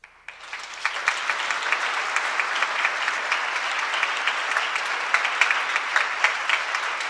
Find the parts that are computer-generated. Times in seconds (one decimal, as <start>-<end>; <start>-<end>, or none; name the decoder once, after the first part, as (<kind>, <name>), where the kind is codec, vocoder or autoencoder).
none